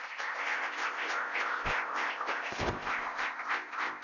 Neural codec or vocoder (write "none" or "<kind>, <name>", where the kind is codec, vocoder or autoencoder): codec, ZipCodec